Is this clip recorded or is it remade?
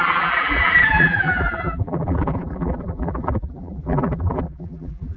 remade